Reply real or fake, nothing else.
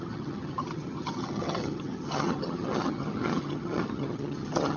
fake